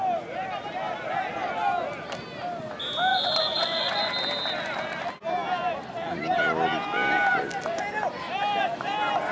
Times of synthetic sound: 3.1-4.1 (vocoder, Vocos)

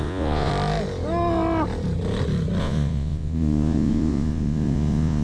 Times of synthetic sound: 0.0-0.5 (vocoder, Vocos); 2.6-5.2

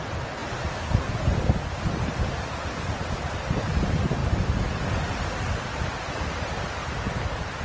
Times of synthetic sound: none

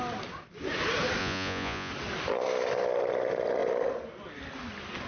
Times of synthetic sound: 1.2-1.9 (vocoder, Vocos)

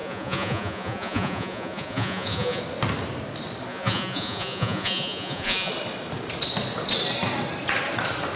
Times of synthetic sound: 0.0-2.6 (vocoder, Vocos); 3.7-5.7

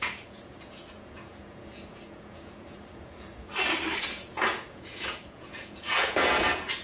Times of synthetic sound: 0.0-3.4 (vocoder, Vocos); 4.0-6.8

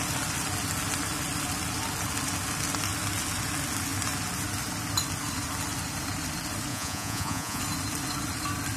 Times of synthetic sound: 6.7-7.6 (vocoder, Vocos)